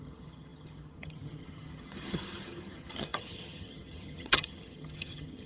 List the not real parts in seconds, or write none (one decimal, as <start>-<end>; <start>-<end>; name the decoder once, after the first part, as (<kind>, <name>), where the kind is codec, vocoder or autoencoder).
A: 0.0-5.5 (vocoder, HiFi-GAN)